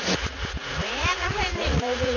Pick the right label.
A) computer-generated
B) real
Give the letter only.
A